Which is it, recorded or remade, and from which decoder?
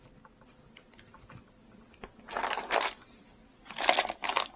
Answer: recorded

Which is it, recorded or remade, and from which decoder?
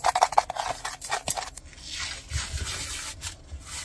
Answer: recorded